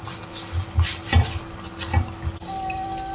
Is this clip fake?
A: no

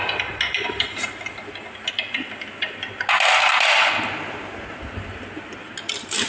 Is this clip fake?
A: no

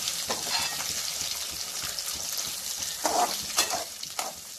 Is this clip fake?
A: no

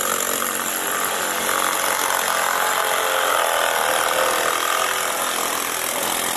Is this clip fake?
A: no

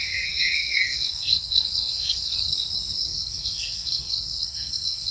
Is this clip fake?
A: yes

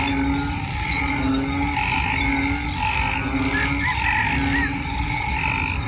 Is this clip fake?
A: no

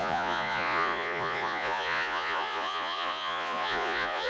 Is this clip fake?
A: yes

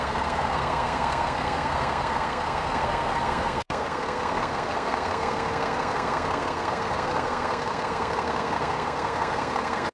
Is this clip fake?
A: yes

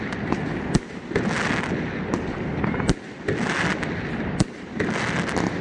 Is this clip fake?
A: no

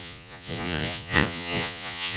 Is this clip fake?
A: yes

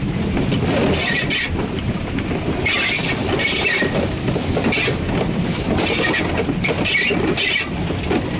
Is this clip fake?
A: no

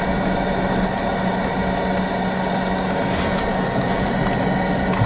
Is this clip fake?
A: no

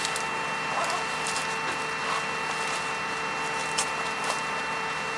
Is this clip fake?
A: no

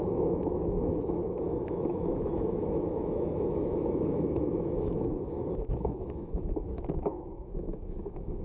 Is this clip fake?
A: yes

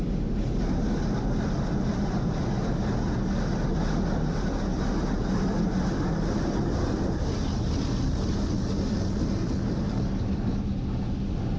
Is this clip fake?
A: no